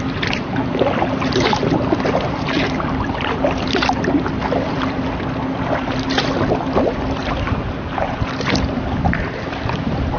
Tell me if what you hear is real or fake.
real